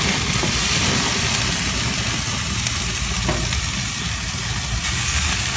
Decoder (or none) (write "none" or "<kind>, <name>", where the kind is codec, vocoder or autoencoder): none